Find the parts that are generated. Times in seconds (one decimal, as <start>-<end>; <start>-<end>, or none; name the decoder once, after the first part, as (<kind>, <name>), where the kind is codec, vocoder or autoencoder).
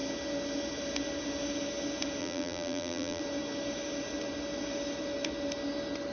2.2-3.2 (vocoder, BigVGAN v2)